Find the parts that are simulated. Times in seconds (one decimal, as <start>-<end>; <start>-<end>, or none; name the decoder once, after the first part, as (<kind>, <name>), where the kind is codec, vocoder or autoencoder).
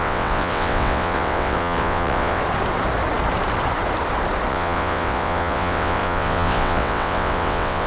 0.0-2.4 (vocoder, WaveNeXt); 4.5-7.9